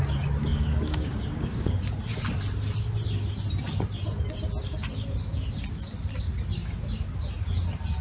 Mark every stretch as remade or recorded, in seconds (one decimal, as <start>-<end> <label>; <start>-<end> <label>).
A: 0.0-0.5 recorded; 0.5-1.8 remade; 1.8-8.0 recorded